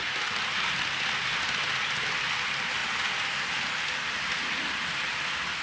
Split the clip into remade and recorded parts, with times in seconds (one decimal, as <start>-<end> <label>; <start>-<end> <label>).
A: 0.0-5.6 recorded